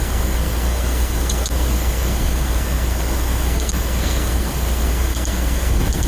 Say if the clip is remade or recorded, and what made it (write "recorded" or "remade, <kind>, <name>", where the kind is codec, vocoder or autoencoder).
remade, codec, SNAC